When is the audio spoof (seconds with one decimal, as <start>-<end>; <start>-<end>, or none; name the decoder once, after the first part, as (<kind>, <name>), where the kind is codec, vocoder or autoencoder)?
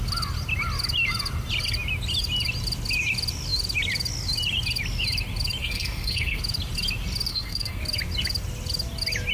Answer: 5.6-6.4 (codec, SNAC); 7.3-7.8